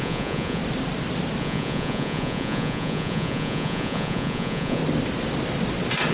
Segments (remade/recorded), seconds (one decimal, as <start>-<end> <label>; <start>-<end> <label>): 0.0-0.6 remade; 0.6-1.4 recorded; 1.4-4.8 remade; 4.8-6.1 recorded